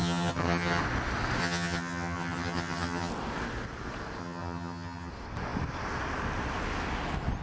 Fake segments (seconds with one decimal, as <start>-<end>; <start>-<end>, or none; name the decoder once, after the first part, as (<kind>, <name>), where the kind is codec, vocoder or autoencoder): 0.0-0.8 (vocoder, HiFi-GAN); 1.4-3.1; 4.2-5.1